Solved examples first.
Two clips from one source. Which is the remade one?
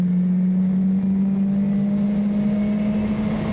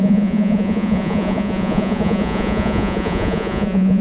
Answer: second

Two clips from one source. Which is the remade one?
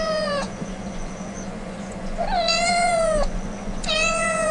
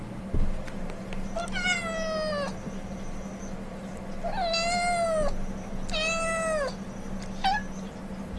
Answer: first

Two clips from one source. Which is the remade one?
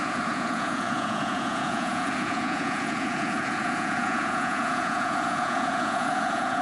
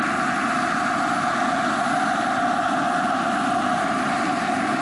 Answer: first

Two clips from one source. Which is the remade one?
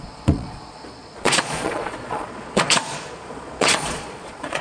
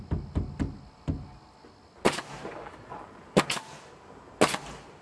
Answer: first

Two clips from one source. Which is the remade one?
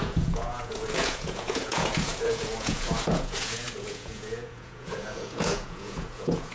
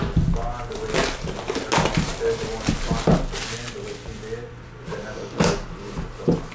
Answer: first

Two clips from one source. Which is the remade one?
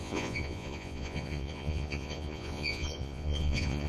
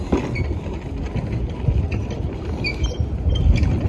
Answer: first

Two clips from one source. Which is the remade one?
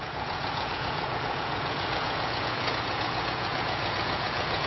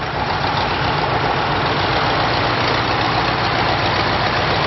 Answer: first